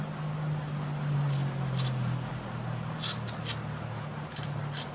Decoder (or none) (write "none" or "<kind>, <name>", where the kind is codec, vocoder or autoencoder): none